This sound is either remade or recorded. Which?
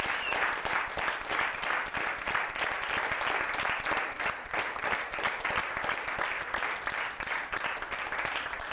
remade